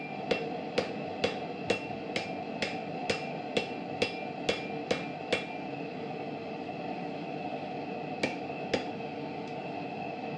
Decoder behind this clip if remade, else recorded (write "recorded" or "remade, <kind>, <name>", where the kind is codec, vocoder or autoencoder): recorded